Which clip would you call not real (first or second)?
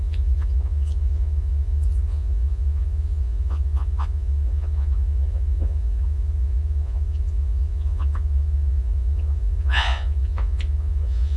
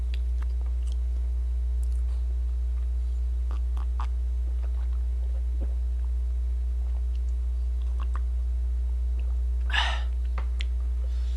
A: first